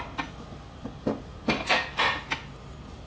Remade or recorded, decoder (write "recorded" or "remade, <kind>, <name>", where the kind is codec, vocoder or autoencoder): recorded